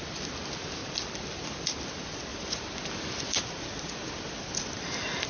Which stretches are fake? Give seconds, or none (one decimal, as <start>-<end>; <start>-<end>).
none